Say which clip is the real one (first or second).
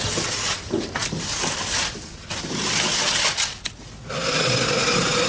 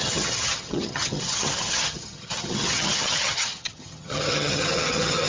first